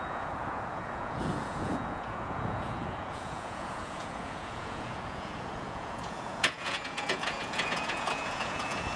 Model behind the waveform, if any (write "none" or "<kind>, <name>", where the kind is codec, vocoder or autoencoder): vocoder, Vocos